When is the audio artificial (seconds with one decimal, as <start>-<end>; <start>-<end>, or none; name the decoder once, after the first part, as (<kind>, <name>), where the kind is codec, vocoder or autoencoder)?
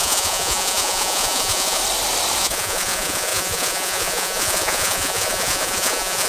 0.0-1.8 (vocoder, Vocos); 2.4-6.3